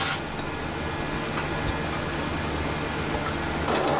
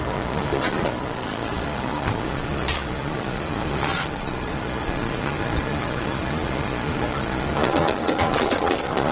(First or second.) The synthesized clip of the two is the second